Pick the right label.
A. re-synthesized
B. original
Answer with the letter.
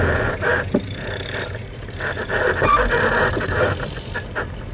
A